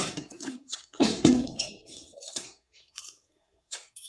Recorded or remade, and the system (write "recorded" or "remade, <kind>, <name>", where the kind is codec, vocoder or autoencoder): remade, codec, SNAC